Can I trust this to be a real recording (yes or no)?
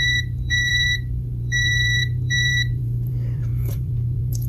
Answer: no